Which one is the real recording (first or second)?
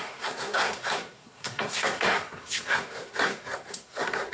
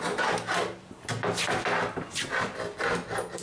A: second